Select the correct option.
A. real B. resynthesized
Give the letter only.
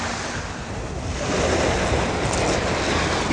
A